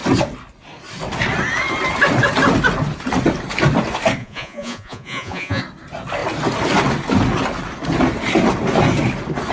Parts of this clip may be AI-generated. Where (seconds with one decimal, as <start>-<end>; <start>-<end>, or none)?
4.2-5.6